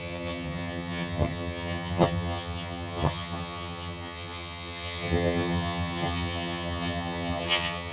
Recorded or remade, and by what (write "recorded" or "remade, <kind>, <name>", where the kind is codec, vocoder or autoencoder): remade, vocoder, HiFi-GAN